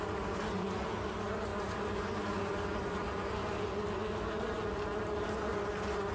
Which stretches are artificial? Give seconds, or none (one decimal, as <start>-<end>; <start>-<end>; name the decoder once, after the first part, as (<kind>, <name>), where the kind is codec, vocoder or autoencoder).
none